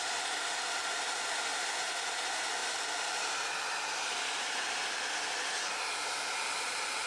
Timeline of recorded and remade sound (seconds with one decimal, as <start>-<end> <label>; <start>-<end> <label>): 0.0-7.1 recorded